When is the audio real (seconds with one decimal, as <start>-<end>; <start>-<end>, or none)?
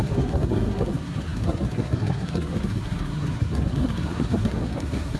none